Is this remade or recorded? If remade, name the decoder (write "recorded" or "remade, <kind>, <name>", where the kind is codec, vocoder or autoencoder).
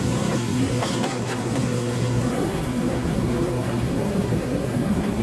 remade, codec, SNAC